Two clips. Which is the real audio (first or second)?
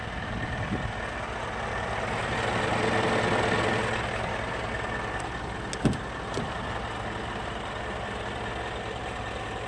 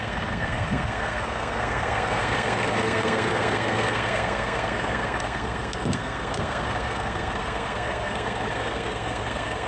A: first